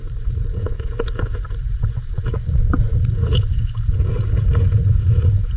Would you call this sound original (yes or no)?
no